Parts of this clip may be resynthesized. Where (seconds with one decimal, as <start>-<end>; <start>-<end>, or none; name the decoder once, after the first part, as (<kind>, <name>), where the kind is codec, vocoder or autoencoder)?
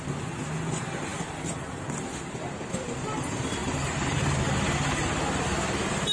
3.6-4.4 (vocoder, BigVGAN v2)